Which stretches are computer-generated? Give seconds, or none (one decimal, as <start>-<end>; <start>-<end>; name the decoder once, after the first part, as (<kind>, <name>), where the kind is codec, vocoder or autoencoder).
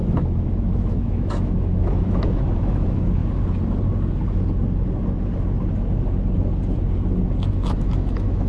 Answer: 0.0-3.2 (autoencoder, DAC-VAE); 7.5-8.5